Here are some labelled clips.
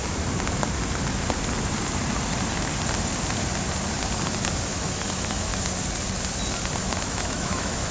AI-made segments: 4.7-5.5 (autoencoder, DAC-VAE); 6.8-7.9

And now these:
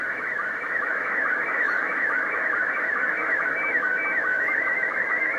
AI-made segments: 0.0-5.4 (autoencoder, DAC-VAE)

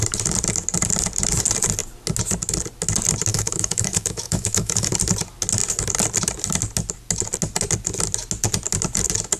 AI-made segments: 3.3-4.9 (autoencoder, DAC-VAE)

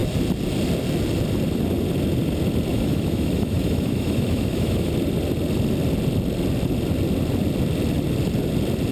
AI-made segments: 2.7-4.9 (autoencoder, DAC-VAE)